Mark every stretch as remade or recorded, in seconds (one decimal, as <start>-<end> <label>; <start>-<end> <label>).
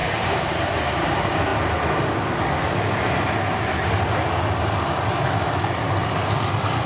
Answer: 0.0-1.1 remade; 1.1-6.9 recorded